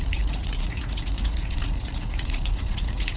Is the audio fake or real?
fake